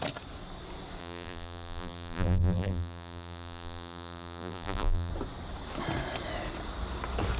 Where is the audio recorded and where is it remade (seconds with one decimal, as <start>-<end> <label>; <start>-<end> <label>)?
0.0-1.0 recorded; 1.0-5.1 remade; 5.1-7.4 recorded